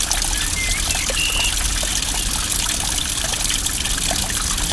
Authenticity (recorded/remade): recorded